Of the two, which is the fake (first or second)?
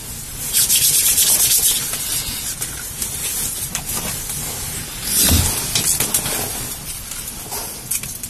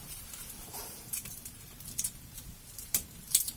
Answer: second